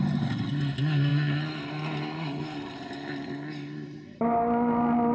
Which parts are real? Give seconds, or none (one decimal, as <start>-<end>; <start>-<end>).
0.0-5.1